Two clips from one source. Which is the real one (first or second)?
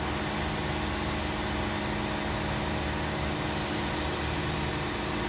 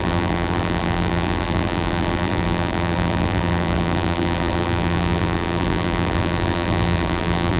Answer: first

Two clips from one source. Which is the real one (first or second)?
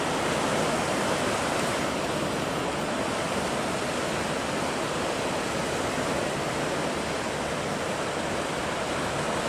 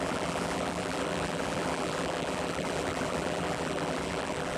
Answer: first